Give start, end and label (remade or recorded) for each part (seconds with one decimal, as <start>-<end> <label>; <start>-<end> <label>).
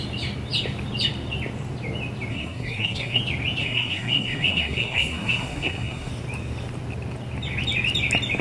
0.0-2.3 recorded; 2.3-3.2 remade; 3.2-3.6 recorded; 3.6-6.1 remade; 6.1-8.4 recorded